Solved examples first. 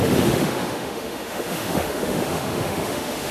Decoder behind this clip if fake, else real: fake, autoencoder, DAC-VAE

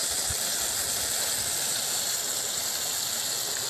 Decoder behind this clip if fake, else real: real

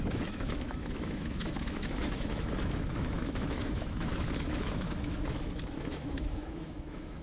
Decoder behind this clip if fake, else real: fake, autoencoder, DAC-VAE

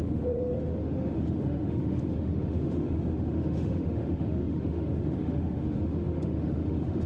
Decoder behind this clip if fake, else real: fake, autoencoder, DAC-VAE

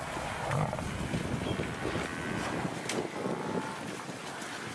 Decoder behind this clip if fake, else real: real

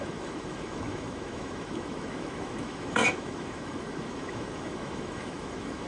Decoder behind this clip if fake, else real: fake, autoencoder, DAC-VAE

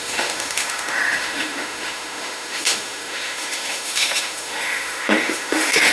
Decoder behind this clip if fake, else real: fake, autoencoder, DAC-VAE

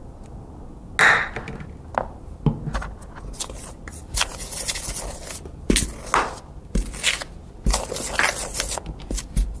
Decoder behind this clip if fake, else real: real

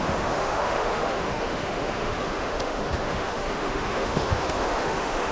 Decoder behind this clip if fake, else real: fake, autoencoder, DAC-VAE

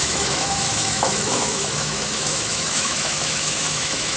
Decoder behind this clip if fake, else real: fake, autoencoder, DAC-VAE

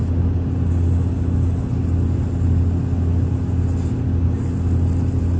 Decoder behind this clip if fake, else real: real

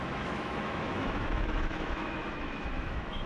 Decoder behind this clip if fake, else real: fake, autoencoder, DAC-VAE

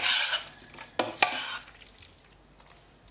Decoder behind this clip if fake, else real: real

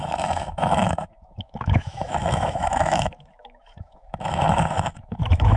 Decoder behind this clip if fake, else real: fake, autoencoder, DAC-VAE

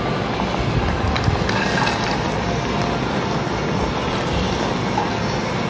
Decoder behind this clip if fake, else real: real